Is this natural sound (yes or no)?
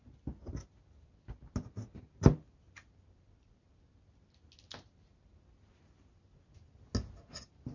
yes